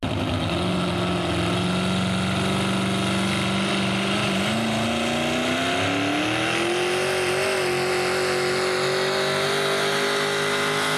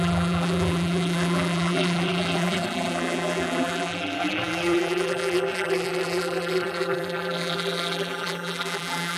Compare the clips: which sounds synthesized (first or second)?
second